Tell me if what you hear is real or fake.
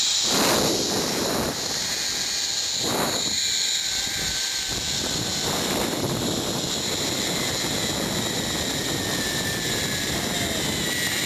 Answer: real